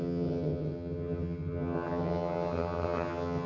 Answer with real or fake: fake